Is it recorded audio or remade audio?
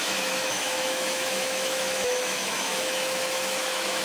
remade